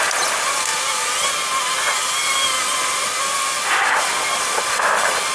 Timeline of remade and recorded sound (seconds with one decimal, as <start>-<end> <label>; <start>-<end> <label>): 0.0-5.3 recorded